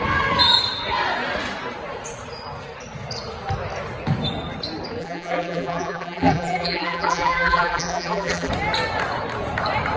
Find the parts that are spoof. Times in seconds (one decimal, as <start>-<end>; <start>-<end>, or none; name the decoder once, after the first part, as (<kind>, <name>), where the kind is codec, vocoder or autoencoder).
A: 5.0-8.5 (vocoder, BigVGAN v2)